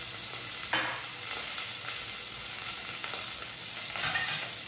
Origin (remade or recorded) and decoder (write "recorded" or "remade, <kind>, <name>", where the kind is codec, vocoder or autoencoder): recorded